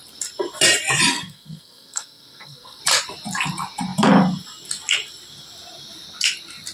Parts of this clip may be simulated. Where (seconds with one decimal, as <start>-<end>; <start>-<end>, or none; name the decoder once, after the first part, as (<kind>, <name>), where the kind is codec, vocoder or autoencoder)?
1.1-2.8 (codec, SNAC)